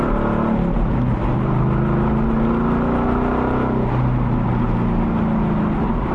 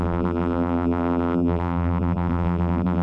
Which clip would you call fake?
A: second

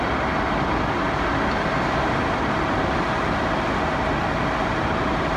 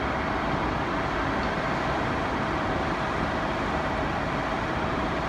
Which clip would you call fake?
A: second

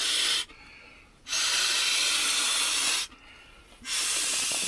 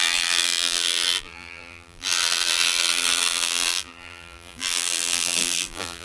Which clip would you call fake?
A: second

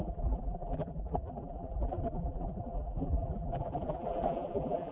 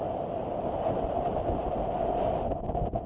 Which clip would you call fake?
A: first